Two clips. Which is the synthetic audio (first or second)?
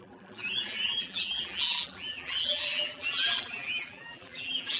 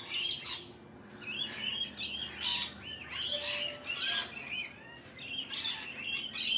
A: first